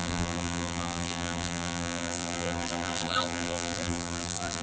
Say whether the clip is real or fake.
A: fake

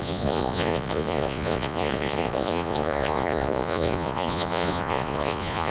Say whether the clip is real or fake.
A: fake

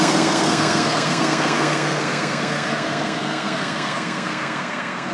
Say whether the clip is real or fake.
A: fake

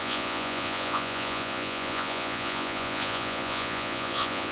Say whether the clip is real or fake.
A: fake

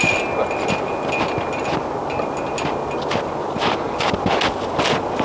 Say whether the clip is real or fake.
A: real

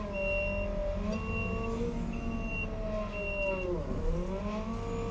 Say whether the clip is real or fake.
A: real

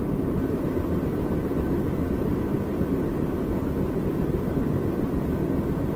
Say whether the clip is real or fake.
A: real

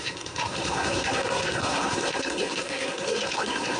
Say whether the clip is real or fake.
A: fake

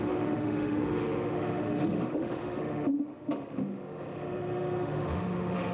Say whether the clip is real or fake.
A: fake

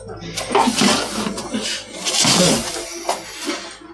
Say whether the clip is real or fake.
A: real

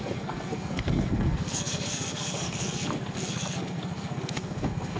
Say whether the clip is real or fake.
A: fake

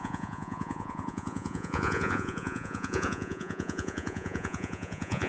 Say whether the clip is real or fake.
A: fake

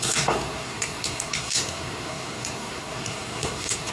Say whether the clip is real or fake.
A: fake